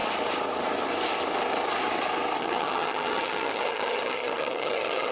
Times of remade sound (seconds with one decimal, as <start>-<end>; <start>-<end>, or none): 2.4-5.1